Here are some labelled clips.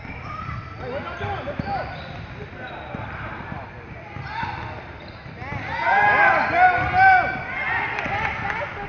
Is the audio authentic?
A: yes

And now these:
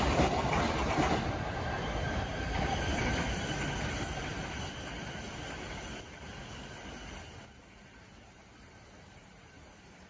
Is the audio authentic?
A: yes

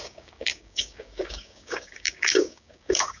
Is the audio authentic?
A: no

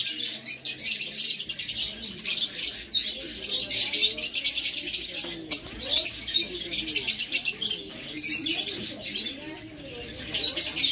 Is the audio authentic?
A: yes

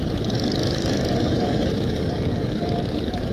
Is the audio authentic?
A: no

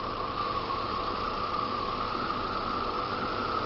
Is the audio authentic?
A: yes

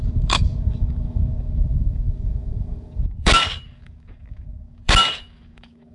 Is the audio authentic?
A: no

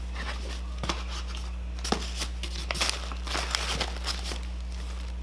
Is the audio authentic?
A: yes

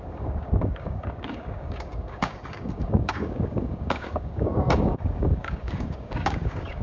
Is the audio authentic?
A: no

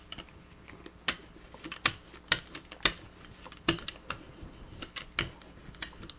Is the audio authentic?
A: yes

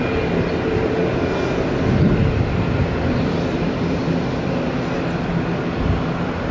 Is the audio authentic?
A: yes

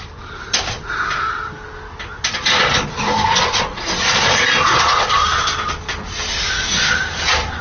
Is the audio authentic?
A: yes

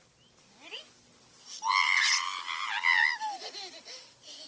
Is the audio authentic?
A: yes